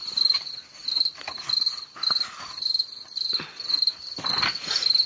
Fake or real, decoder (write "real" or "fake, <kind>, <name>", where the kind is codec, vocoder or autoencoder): real